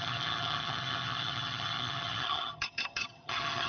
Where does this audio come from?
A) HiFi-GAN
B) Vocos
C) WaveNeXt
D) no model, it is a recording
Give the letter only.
A